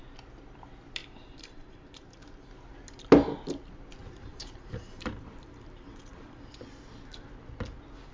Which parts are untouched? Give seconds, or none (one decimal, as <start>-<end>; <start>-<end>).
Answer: 0.0-1.0; 2.5-4.0; 6.5-8.1